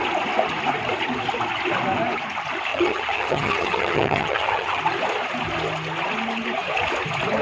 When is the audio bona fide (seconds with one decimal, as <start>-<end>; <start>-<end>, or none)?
0.0-2.7; 4.8-7.4